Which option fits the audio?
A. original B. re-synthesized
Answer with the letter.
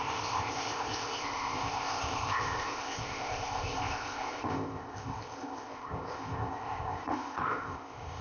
B